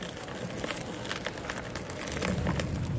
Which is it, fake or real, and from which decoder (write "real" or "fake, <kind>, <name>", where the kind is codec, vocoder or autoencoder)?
real